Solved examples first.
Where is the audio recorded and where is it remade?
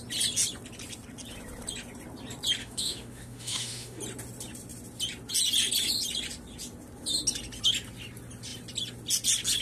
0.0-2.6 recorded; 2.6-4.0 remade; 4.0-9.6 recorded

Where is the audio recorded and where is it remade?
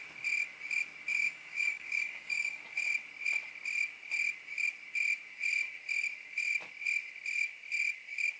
0.0-1.1 recorded; 1.1-2.6 remade; 2.6-8.4 recorded